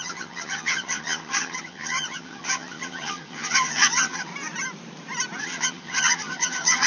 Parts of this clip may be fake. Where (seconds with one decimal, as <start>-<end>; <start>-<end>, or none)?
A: 0.0-4.3; 5.4-6.9